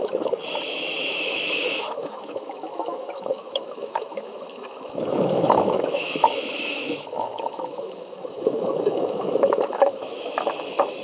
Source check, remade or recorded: remade